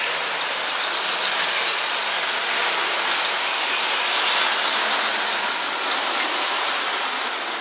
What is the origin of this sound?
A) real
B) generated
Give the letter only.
A